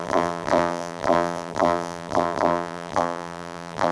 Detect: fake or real fake